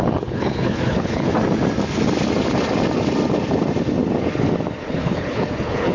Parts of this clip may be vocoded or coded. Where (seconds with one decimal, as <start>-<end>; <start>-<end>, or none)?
0.0-1.3; 4.8-5.9